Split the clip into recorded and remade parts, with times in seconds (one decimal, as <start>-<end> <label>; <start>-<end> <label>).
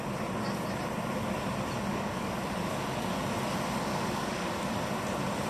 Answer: 0.0-1.9 recorded; 1.9-2.4 remade; 2.4-3.9 recorded; 3.9-4.6 remade; 4.6-5.5 recorded